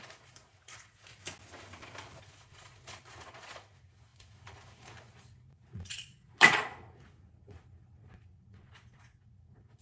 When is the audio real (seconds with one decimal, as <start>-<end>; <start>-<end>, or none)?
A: 1.1-2.2